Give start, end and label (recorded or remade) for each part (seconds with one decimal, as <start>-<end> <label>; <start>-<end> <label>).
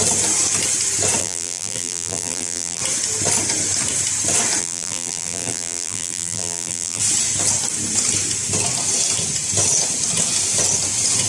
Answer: 0.0-1.2 recorded; 1.2-2.8 remade; 2.8-4.6 recorded; 4.6-7.0 remade; 7.0-11.3 recorded